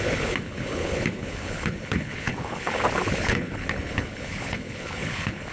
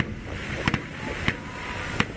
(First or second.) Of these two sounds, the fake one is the first